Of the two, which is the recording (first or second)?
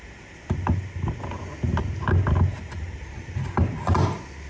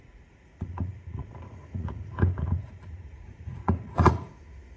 first